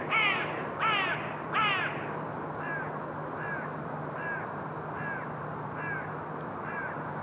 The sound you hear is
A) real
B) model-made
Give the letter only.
A